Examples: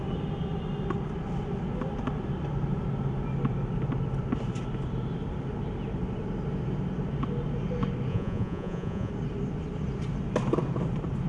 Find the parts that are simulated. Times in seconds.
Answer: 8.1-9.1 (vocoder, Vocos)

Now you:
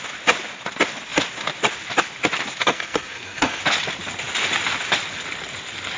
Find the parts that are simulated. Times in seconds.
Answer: 2.6-3.6 (codec, SNAC)

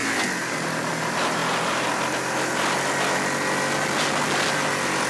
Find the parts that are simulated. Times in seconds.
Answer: none